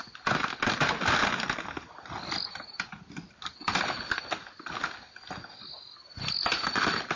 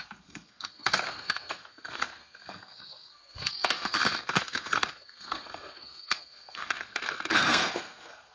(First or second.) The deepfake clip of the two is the second